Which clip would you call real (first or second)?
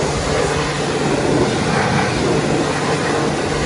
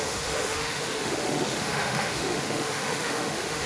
first